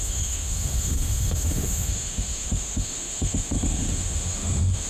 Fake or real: fake